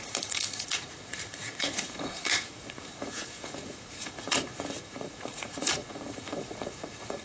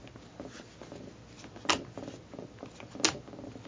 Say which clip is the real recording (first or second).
second